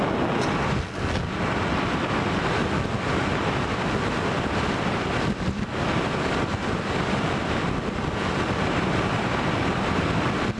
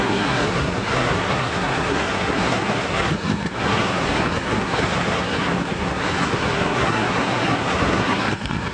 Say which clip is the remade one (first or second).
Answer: second